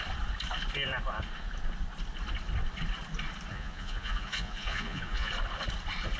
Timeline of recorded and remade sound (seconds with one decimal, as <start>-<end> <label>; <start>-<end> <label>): 0.0-3.5 recorded; 3.5-5.3 remade; 5.3-6.2 recorded